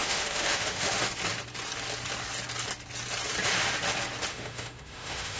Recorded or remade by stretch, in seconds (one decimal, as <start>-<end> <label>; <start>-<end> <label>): 0.0-1.1 remade; 1.1-4.3 recorded; 4.3-5.4 remade